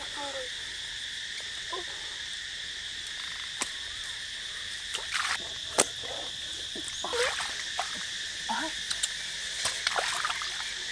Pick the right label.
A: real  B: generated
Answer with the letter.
A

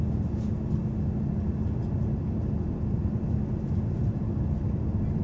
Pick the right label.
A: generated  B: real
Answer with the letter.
B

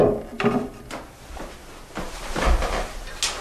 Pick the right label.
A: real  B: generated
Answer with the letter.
A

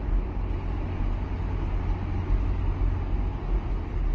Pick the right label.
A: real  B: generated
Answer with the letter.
A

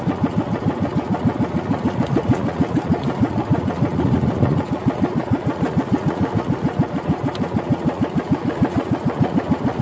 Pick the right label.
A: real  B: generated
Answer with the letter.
B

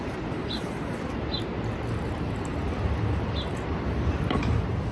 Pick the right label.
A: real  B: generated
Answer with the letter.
A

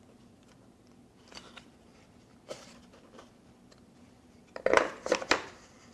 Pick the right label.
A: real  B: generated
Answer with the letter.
B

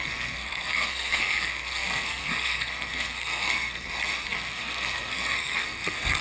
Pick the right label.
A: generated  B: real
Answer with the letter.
A